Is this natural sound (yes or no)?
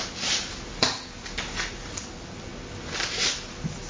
yes